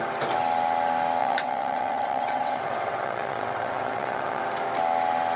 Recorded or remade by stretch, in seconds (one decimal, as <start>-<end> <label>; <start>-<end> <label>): 0.0-1.2 recorded; 1.2-4.4 remade; 4.4-5.4 recorded

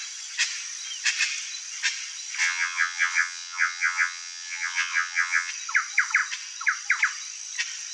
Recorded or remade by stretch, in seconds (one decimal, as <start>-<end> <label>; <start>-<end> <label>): 0.0-2.4 recorded; 2.4-5.5 remade; 5.5-7.9 recorded